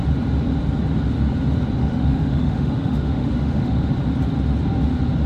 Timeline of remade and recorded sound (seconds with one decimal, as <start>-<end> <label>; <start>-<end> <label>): 0.0-1.8 recorded; 1.8-3.9 remade; 3.9-5.3 recorded